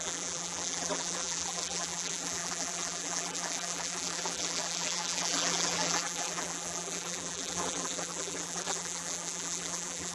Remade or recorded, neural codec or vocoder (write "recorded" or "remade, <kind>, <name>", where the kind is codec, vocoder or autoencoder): remade, vocoder, BigVGAN v2